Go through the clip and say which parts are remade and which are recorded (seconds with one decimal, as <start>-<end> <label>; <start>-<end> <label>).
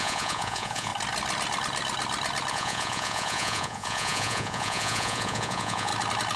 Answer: 0.0-0.9 remade; 0.9-2.5 recorded; 2.5-5.9 remade; 5.9-6.4 recorded